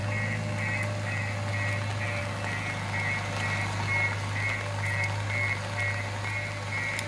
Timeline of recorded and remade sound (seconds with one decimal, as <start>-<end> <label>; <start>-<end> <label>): 0.0-7.1 recorded